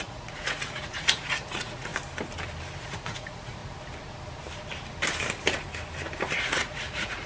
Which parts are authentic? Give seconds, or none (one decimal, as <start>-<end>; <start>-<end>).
1.9-2.8; 3.6-6.4